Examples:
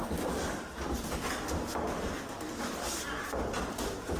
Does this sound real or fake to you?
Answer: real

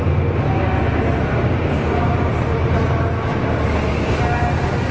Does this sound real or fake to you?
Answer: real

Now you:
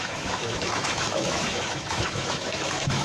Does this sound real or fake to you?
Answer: fake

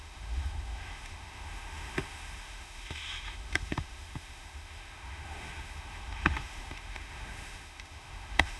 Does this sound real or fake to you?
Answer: fake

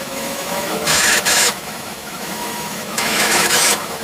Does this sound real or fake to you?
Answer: fake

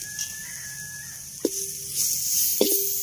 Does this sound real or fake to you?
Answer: real